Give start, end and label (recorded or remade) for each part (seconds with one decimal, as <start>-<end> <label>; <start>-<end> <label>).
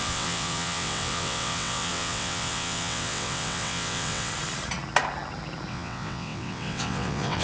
0.0-4.3 remade; 4.3-5.7 recorded; 5.7-7.4 remade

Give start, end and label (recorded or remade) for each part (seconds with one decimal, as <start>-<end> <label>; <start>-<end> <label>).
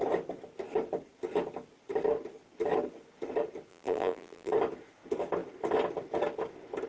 0.0-3.7 recorded; 3.7-4.5 remade; 4.5-6.9 recorded